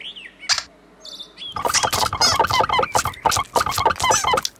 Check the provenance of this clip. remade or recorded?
recorded